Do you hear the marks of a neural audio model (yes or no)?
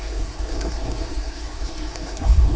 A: yes